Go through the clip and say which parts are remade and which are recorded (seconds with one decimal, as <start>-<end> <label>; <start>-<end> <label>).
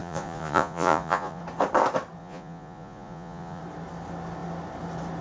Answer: 0.0-1.4 remade; 1.4-2.2 recorded; 2.2-3.6 remade; 3.6-5.2 recorded